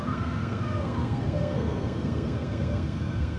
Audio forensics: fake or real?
fake